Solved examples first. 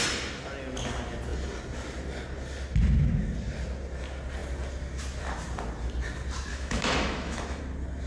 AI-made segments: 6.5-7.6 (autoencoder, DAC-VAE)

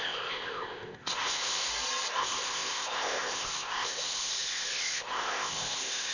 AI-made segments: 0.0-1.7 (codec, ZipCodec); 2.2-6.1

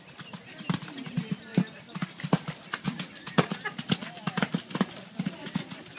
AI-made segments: none

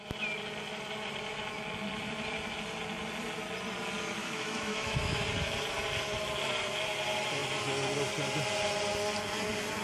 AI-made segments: 4.2-5.2 (autoencoder, DAC-VAE)

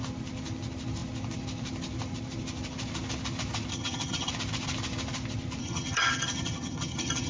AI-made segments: 3.7-4.3 (vocoder, HiFi-GAN); 5.6-7.3